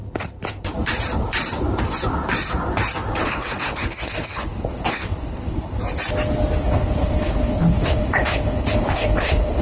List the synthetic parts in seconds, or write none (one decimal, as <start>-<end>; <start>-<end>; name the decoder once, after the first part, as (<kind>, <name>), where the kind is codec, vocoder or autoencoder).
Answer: 3.2-5.8 (codec, HILCodec); 6.6-9.6